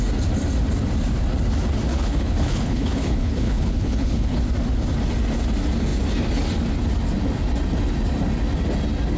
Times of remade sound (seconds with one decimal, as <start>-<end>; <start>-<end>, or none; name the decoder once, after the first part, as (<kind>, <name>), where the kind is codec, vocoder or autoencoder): 1.9-4.4 (codec, HILCodec)